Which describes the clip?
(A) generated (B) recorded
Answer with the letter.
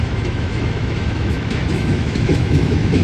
A